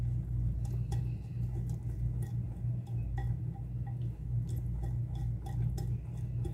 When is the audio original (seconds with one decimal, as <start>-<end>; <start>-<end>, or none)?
0.0-6.5

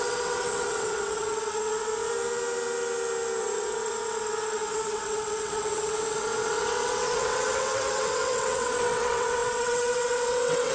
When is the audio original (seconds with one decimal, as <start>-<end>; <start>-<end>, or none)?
1.9-3.4

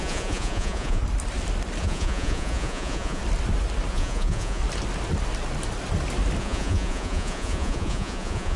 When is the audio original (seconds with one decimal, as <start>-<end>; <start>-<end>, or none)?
1.0-1.8; 3.2-3.9; 4.6-6.4

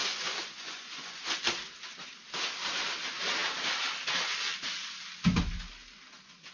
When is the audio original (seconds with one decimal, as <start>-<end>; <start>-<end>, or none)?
1.2-6.5

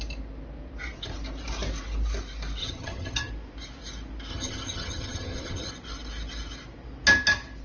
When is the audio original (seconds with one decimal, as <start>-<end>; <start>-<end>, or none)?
0.0-2.6; 3.3-4.3; 5.7-7.6

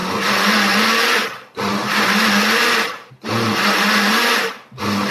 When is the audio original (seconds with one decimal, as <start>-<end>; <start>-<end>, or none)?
0.0-5.1